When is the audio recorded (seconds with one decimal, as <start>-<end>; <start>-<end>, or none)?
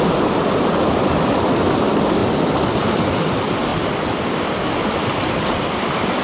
0.0-2.2; 3.3-3.7; 5.0-6.2